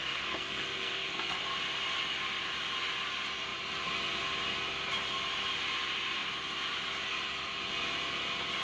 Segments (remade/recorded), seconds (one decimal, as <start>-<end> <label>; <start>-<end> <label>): 0.0-1.4 remade; 1.4-8.6 recorded